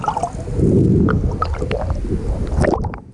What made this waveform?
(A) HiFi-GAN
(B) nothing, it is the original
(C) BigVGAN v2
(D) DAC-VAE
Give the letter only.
B